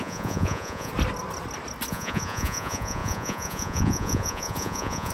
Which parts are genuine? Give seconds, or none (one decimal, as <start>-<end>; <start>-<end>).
0.9-1.9

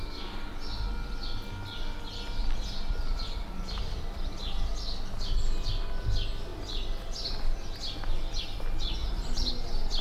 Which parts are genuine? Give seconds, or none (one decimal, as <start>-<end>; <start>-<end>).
0.0-2.4; 4.7-9.0; 9.5-10.0

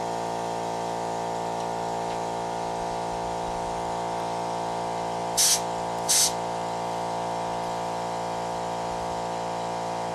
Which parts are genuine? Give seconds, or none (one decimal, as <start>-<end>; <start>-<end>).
0.0-10.1

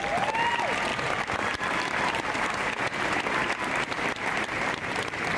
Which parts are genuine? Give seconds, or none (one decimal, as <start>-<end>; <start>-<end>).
0.0-0.9; 4.1-5.4

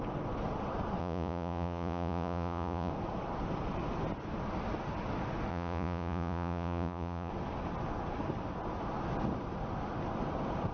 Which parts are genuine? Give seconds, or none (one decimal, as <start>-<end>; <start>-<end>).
0.0-1.0; 2.9-5.5; 7.3-10.7

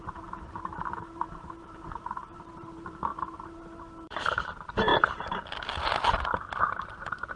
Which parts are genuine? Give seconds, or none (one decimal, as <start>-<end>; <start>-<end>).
4.9-6.6

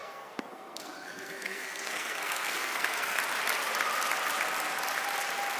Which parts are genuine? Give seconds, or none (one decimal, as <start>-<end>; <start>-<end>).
3.2-5.6